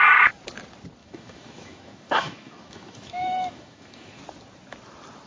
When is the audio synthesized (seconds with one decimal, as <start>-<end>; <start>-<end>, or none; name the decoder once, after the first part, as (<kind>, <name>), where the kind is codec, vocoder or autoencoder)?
1.0-4.2 (autoencoder, DAC-VAE)